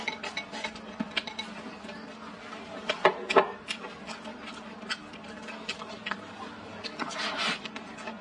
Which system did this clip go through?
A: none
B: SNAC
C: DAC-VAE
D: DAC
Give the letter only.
A